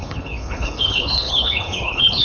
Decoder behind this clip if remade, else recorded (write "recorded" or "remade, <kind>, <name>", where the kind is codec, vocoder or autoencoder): remade, codec, HILCodec